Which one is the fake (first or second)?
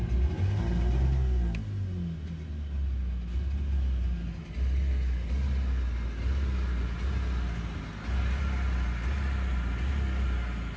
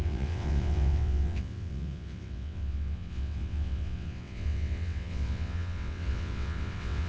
second